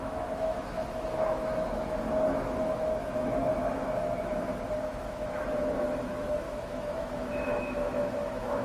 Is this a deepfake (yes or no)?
yes